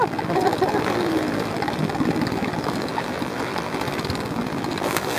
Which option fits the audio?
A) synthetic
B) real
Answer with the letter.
A